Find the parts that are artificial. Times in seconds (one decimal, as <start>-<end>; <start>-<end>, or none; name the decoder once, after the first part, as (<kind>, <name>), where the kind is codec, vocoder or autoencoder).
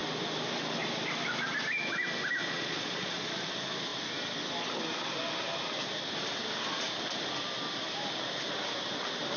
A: 2.4-3.3 (vocoder, Vocos)